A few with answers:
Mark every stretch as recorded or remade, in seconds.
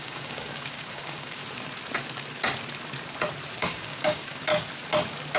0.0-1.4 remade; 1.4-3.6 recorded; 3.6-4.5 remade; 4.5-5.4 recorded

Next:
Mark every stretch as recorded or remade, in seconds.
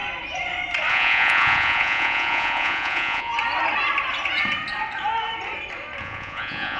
0.0-0.9 recorded; 0.9-3.3 remade; 3.3-6.0 recorded; 6.0-6.8 remade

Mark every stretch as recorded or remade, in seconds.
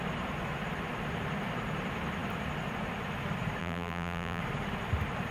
0.0-3.6 recorded; 3.6-4.4 remade; 4.4-5.3 recorded